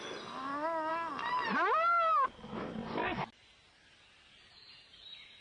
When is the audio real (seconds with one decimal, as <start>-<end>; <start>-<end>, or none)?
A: 0.0-5.4

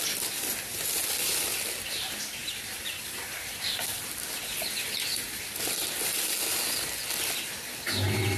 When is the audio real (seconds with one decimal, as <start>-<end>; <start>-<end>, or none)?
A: 0.0-0.7; 1.2-2.4; 4.0-8.4

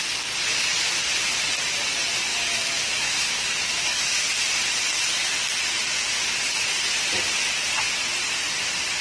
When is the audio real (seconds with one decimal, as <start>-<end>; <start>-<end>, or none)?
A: 0.0-0.5; 1.0-2.3; 4.2-9.0

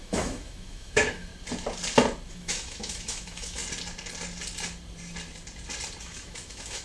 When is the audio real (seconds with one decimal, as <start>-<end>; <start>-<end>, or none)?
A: 1.3-2.3; 3.6-6.0